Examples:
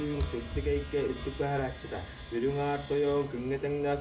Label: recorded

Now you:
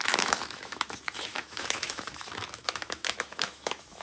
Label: remade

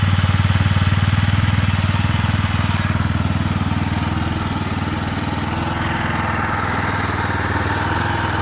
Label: recorded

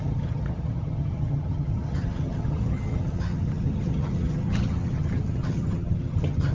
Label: remade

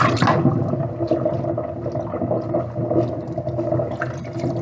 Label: recorded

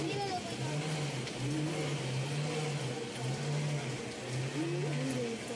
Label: recorded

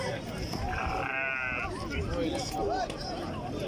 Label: recorded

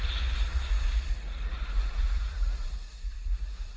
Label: remade